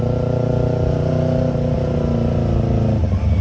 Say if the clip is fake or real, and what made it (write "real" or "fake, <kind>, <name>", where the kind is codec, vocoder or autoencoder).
real